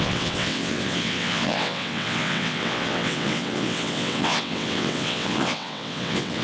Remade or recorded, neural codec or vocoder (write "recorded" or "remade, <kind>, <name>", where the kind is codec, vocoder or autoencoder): remade, vocoder, WaveNeXt